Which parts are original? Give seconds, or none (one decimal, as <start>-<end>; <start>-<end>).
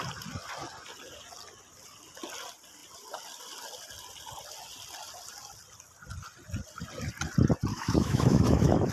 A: 0.0-7.7